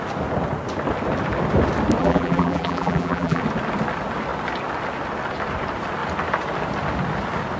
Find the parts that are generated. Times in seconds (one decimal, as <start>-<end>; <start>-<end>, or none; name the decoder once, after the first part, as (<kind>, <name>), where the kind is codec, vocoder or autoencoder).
2.0-3.4 (vocoder, BigVGAN v2)